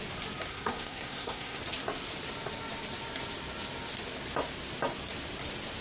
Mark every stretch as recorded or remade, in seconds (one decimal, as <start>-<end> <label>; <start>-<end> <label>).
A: 0.0-0.5 recorded; 0.5-1.6 remade; 1.6-5.8 recorded